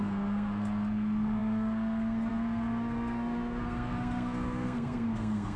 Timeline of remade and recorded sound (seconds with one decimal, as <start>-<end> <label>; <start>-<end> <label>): 0.0-5.6 remade